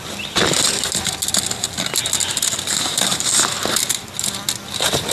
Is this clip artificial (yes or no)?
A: no